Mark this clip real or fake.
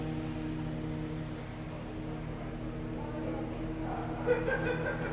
real